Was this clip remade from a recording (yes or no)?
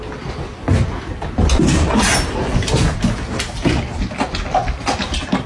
no